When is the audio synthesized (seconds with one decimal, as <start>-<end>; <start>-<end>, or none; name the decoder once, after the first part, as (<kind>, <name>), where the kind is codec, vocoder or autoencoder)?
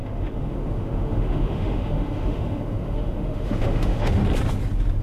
0.0-4.2 (autoencoder, DAC-VAE)